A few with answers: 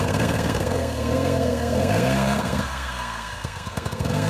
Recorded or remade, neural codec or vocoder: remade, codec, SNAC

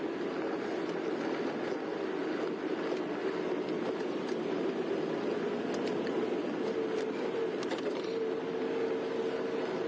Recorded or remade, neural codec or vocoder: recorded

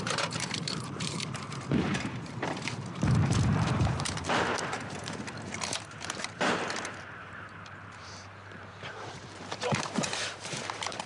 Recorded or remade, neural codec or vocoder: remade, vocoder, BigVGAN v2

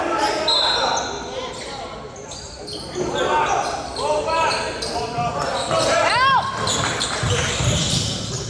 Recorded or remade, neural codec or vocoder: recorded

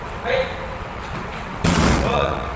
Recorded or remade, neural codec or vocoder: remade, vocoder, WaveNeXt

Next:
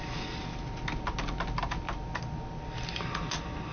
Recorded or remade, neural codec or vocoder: recorded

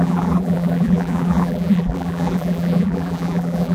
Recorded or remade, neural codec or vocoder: remade, vocoder, BigVGAN v2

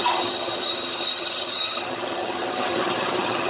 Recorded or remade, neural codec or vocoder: remade, vocoder, HiFi-GAN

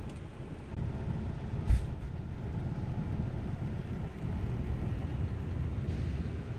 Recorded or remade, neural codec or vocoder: recorded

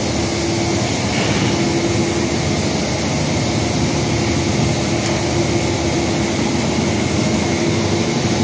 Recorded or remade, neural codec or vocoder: recorded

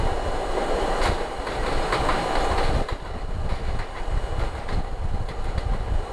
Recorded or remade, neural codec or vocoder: recorded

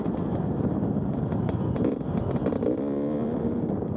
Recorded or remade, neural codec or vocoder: recorded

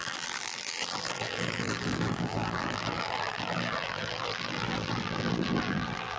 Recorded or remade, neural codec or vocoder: remade, vocoder, BigVGAN v2